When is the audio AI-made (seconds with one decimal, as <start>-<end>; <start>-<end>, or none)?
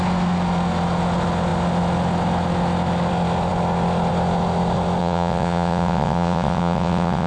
5.0-7.3